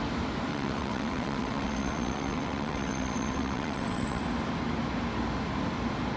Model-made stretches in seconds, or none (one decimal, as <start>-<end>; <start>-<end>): 0.5-4.2